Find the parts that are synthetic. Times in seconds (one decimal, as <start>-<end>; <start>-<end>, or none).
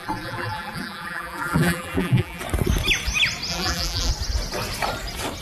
0.0-2.4; 3.5-4.1